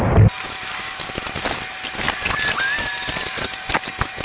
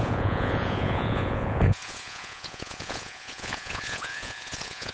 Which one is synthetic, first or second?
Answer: second